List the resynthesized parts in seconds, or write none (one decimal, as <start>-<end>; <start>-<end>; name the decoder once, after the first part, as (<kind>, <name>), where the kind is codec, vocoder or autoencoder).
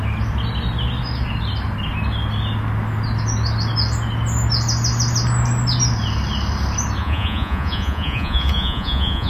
7.0-9.3 (vocoder, Vocos)